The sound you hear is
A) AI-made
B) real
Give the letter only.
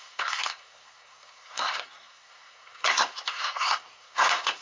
A